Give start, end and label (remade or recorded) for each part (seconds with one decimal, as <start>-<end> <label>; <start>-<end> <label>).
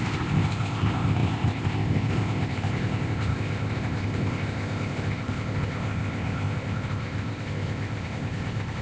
0.0-8.8 remade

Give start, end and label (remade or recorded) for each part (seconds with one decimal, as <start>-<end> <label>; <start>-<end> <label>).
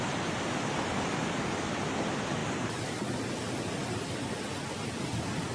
0.0-5.5 recorded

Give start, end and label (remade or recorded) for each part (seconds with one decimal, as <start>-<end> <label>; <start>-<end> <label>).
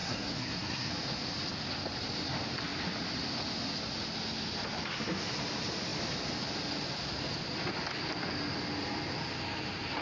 0.0-0.9 remade; 0.9-10.0 recorded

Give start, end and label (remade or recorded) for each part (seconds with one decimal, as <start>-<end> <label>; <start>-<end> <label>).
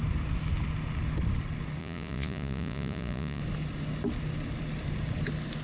0.0-1.8 recorded; 1.8-3.4 remade; 3.4-5.6 recorded